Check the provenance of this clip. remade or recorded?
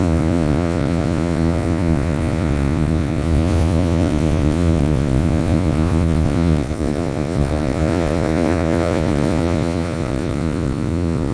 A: remade